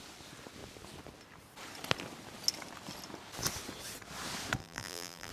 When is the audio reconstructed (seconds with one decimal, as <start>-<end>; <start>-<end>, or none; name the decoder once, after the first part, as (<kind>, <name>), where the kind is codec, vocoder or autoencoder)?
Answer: 4.6-5.3 (vocoder, BigVGAN v2)